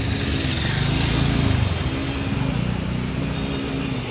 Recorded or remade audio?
recorded